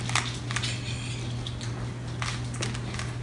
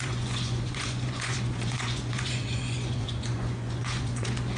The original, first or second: first